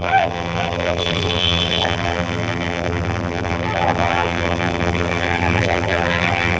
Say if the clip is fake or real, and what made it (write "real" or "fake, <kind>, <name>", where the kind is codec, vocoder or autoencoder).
fake, vocoder, BigVGAN v2